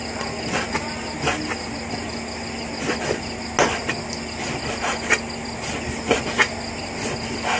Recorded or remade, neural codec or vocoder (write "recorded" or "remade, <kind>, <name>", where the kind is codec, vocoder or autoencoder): recorded